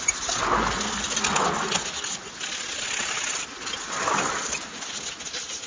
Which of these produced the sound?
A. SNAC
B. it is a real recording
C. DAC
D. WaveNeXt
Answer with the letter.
B